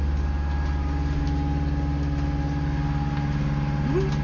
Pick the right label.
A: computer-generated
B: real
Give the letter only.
B